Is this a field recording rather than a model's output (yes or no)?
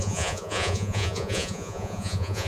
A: no